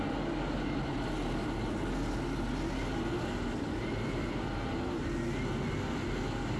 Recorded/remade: recorded